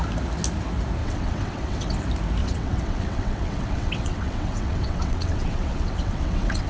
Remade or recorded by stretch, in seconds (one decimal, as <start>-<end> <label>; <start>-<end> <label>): 0.0-1.0 recorded; 1.0-2.0 remade; 2.0-2.4 recorded; 2.4-6.7 remade